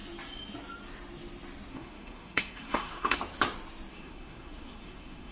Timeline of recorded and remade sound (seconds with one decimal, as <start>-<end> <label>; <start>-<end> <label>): 0.0-1.7 recorded; 1.7-3.2 remade; 3.2-3.9 recorded; 3.9-5.3 remade